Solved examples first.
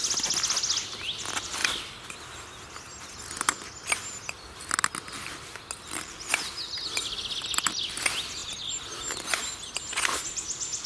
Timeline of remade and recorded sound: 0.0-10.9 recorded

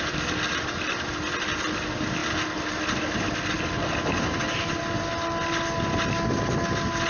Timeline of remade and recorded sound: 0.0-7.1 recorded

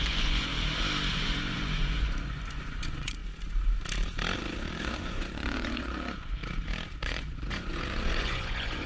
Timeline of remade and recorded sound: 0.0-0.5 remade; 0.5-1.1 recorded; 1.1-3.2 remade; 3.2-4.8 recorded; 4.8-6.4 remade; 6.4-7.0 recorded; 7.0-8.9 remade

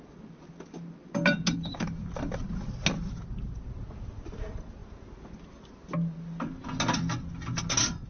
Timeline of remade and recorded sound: 0.0-8.1 recorded